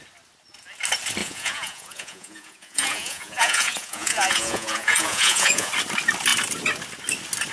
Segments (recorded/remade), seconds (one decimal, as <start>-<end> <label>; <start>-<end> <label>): 0.0-1.2 recorded; 1.2-5.7 remade; 5.7-7.5 recorded